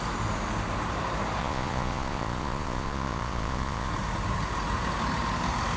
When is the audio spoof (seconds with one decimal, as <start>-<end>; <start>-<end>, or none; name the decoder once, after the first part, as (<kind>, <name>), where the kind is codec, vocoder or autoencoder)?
1.4-3.9 (vocoder, Vocos)